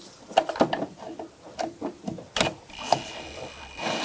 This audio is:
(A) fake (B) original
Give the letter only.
B